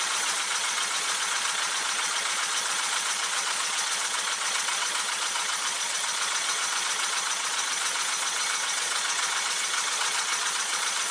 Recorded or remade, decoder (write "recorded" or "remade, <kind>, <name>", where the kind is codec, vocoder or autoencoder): remade, vocoder, Vocos